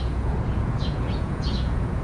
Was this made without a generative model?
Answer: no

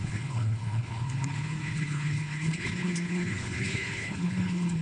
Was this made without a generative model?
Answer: no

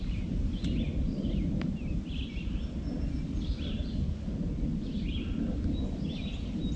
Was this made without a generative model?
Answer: yes